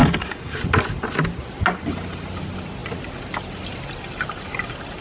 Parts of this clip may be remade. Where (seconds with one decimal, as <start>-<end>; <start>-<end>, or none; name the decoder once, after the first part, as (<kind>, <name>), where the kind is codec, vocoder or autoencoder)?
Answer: 0.0-0.6 (codec, DAC)